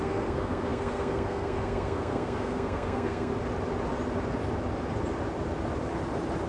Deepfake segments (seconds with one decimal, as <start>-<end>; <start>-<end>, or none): 0.0-3.3